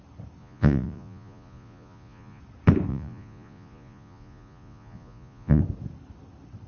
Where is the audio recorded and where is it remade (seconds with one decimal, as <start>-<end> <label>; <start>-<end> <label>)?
0.0-0.4 recorded; 0.4-2.4 remade; 2.4-2.9 recorded; 2.9-5.6 remade; 5.6-6.7 recorded